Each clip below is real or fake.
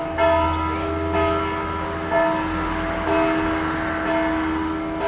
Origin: real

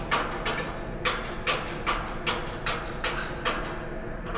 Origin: real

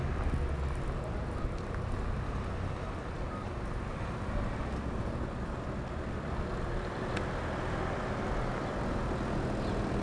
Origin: real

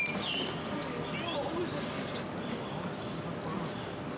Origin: real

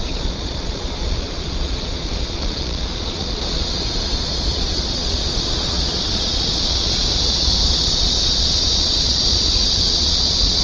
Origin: fake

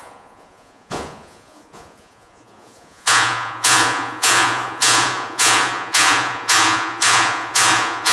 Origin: fake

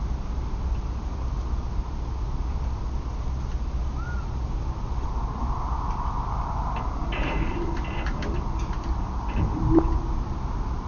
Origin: real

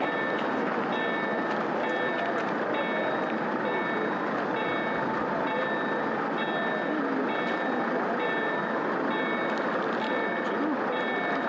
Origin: real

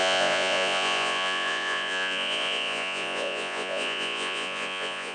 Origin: fake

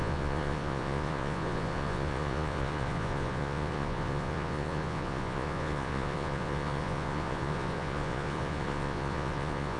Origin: fake